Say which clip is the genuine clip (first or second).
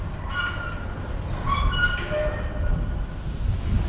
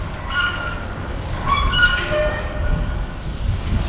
first